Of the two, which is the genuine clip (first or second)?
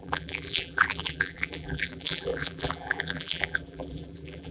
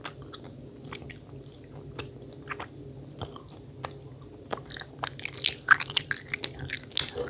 second